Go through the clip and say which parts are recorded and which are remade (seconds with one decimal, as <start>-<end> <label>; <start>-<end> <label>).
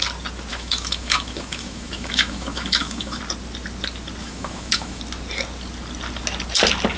0.0-0.5 recorded; 0.5-3.2 remade; 3.2-4.2 recorded; 4.2-5.0 remade; 5.0-7.0 recorded